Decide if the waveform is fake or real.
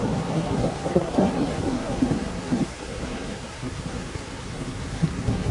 fake